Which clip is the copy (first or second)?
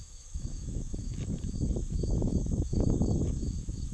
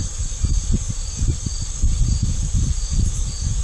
first